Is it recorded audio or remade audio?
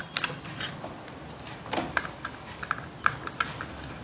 recorded